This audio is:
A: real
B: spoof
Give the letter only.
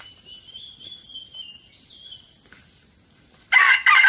A